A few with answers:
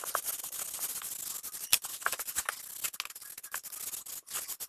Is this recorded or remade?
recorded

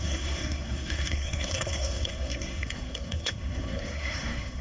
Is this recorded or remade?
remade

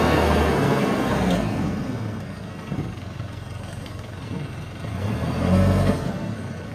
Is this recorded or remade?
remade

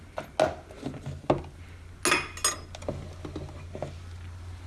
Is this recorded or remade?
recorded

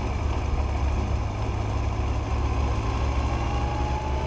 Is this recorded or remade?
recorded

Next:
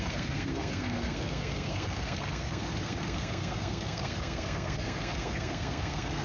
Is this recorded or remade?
remade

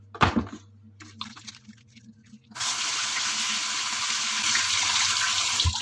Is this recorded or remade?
recorded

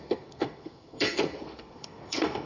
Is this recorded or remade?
remade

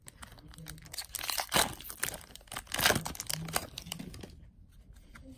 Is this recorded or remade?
recorded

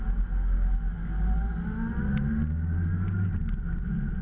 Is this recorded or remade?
recorded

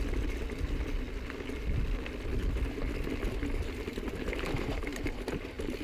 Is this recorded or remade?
recorded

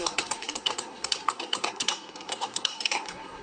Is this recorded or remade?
remade